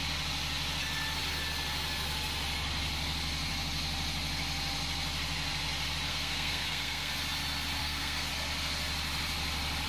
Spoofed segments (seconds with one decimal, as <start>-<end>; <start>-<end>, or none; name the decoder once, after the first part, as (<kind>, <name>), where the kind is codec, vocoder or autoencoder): 6.1-7.1 (codec, SNAC); 7.8-8.3